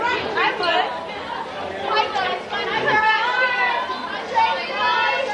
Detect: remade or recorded recorded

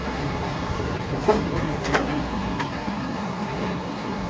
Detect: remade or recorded remade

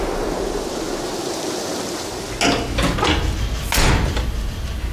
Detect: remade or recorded recorded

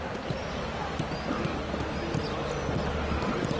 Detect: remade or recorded recorded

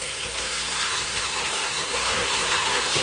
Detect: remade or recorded remade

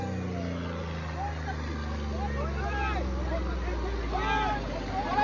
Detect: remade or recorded recorded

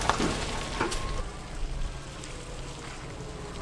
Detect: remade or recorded recorded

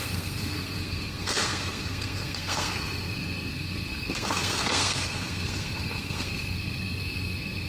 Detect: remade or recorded remade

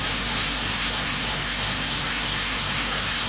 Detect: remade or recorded remade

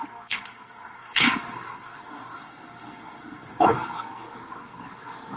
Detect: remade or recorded remade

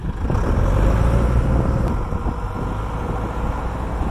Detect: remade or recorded recorded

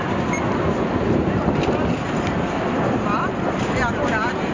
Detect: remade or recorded recorded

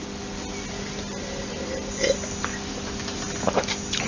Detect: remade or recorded recorded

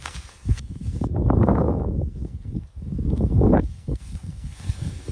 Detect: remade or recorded remade